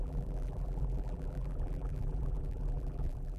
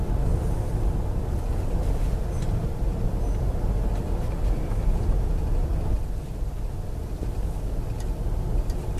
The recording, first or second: second